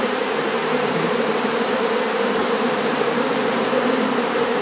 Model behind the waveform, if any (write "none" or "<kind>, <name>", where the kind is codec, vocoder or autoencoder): vocoder, BigVGAN v2